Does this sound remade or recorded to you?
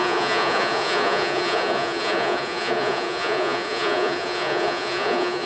remade